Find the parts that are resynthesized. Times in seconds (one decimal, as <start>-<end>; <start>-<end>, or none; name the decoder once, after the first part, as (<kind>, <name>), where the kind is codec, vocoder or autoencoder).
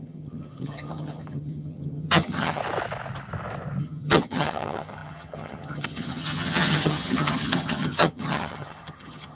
0.0-2.6 (vocoder, HiFi-GAN); 3.8-9.4